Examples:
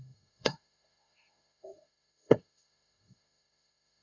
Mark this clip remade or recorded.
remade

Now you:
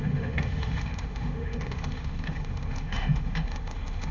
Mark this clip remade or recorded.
remade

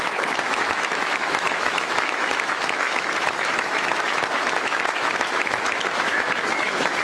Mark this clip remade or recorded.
remade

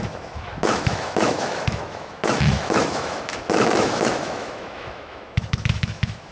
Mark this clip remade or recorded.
remade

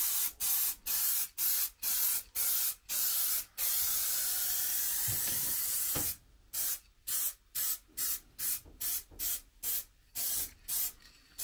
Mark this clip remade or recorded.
recorded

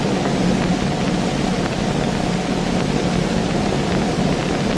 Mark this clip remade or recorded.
recorded